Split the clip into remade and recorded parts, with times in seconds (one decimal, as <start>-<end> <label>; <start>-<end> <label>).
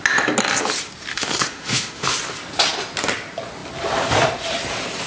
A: 0.0-1.1 recorded; 1.1-2.1 remade; 2.1-5.1 recorded